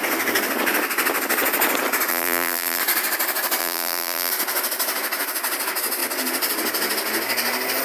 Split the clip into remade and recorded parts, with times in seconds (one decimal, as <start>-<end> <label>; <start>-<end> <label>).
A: 0.0-2.1 recorded; 2.1-2.8 remade; 2.8-3.6 recorded; 3.6-4.3 remade; 4.3-7.8 recorded